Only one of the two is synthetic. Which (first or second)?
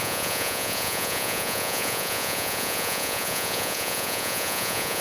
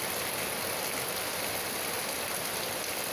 first